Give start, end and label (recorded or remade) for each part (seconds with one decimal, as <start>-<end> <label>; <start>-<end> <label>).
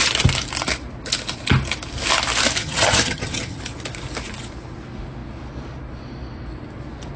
0.0-2.6 recorded; 2.6-3.6 remade; 3.6-7.2 recorded